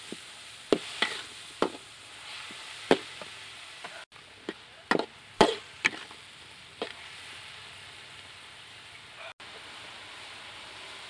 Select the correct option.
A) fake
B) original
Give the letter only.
B